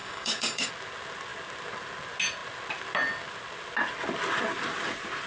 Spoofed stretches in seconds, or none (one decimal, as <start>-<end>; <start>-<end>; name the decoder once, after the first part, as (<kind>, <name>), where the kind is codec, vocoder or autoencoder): 0.0-0.7 (codec, DAC)